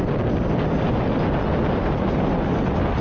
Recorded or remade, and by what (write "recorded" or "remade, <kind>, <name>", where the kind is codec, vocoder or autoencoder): recorded